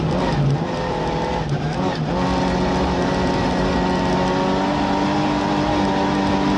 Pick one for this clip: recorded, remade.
recorded